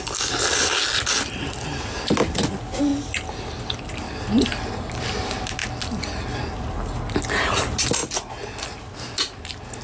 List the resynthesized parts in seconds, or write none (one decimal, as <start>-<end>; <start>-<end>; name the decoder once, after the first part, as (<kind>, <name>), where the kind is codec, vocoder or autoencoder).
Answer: none